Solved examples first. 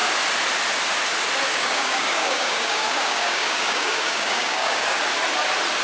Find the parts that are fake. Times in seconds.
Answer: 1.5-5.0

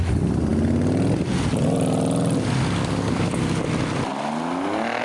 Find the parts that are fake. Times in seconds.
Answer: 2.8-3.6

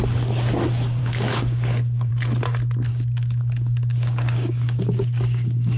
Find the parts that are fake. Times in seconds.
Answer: 1.0-2.1; 2.9-5.8